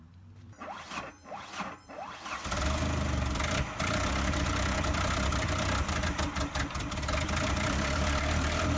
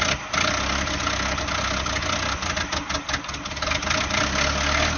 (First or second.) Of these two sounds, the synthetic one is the first